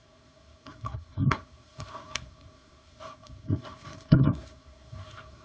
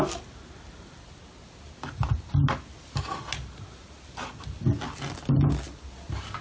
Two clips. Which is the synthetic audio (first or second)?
first